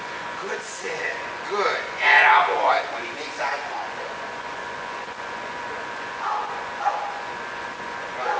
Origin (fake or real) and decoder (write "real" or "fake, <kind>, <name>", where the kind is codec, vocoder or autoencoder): fake, vocoder, Vocos